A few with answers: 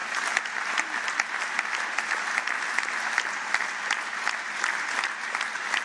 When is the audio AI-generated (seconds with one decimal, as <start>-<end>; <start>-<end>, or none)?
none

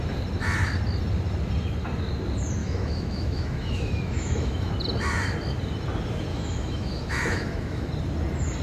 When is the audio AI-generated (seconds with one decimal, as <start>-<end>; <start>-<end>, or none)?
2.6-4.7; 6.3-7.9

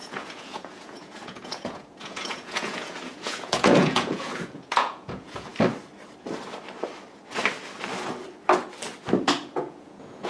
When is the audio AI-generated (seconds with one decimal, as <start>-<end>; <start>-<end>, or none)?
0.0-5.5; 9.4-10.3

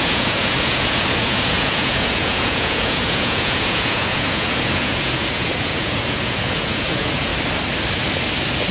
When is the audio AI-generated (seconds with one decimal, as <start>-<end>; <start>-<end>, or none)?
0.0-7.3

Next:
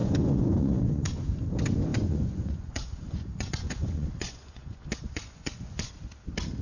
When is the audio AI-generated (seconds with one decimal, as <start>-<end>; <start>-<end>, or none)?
0.0-1.1; 1.9-5.9